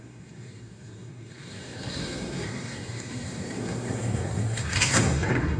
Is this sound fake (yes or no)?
yes